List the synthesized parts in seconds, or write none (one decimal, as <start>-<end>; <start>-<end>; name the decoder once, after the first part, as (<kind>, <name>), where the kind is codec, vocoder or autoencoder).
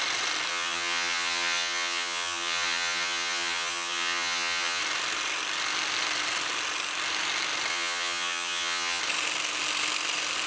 0.5-4.8 (vocoder, HiFi-GAN); 7.7-9.0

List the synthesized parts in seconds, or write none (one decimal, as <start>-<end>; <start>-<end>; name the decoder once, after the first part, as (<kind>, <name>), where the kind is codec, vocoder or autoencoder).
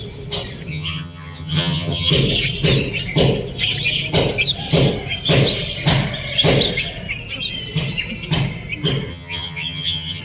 0.7-2.1 (vocoder, HiFi-GAN); 9.1-10.2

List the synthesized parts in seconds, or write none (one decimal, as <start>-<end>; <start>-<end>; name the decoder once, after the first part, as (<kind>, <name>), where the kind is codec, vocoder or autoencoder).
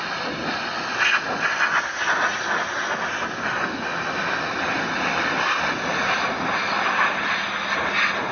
none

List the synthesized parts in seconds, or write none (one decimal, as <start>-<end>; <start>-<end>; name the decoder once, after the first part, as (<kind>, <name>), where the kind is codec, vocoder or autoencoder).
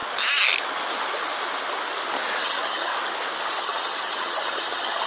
2.4-2.9 (vocoder, HiFi-GAN); 3.6-5.1